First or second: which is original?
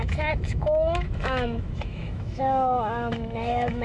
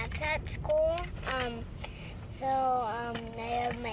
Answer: second